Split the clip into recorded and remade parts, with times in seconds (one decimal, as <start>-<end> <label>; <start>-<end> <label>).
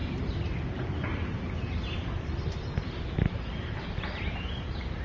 0.0-5.0 recorded